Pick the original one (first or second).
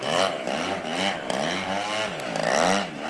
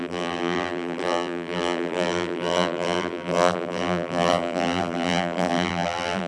first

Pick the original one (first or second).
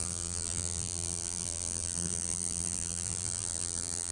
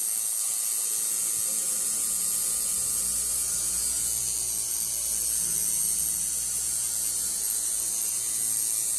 second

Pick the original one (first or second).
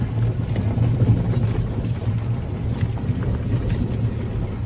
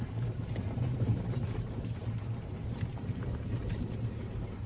first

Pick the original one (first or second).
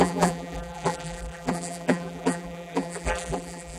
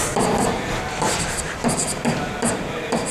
second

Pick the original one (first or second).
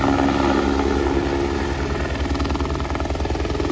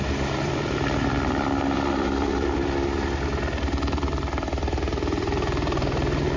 first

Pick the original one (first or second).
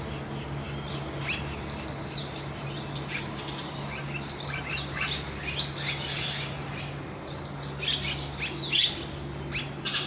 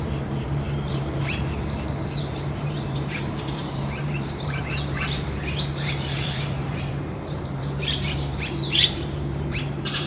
first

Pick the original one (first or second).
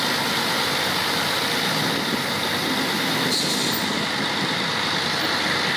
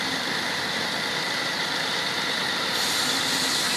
first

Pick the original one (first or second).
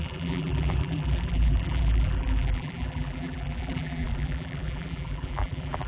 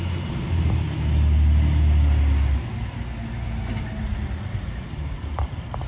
second